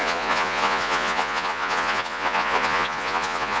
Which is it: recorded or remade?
remade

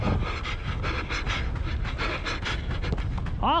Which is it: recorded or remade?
recorded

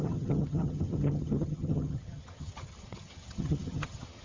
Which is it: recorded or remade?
remade